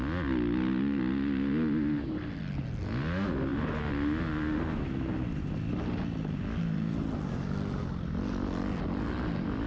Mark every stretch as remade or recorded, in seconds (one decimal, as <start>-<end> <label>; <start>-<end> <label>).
0.0-9.7 recorded